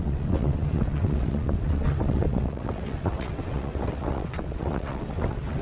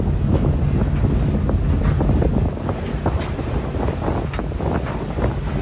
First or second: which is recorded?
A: second